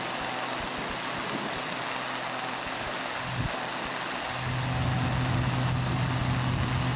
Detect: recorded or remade recorded